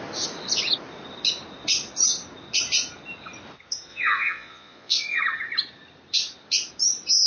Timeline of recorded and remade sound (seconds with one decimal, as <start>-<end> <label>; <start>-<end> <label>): 0.0-3.9 recorded; 3.9-5.2 remade; 5.2-7.3 recorded